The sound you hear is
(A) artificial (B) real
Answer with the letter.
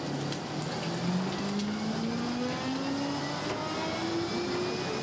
B